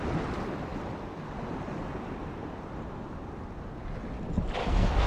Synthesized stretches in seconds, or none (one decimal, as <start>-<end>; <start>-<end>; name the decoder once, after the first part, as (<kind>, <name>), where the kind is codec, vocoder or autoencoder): 4.6-5.1 (codec, SNAC)